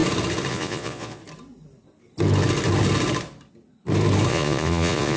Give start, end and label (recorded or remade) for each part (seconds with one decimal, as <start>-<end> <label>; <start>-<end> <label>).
0.0-0.5 recorded; 0.5-1.2 remade; 1.2-4.3 recorded; 4.3-5.2 remade